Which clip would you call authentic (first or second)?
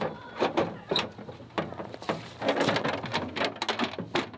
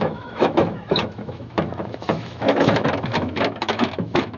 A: first